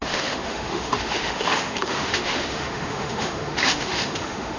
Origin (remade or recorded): remade